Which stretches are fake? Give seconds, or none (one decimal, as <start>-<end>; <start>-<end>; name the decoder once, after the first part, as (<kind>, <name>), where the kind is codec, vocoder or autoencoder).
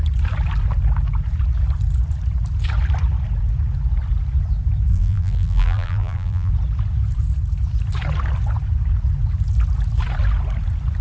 4.9-6.5 (vocoder, BigVGAN v2)